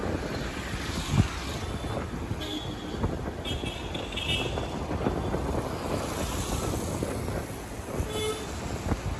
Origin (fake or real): real